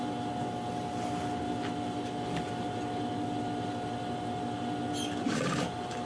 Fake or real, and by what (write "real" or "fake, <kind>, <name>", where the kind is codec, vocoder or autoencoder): real